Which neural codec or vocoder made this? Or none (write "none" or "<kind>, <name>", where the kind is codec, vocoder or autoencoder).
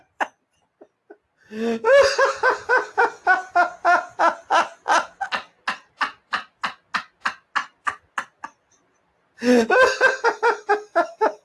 none